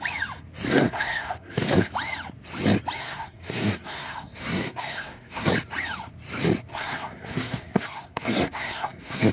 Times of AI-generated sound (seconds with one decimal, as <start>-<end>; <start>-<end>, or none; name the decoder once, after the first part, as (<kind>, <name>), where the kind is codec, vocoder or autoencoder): 0.7-1.9 (codec, SNAC); 3.0-5.5; 6.7-9.3